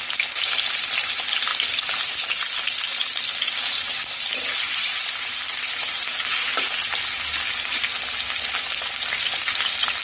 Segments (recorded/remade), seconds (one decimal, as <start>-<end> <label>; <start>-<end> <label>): 0.0-10.0 recorded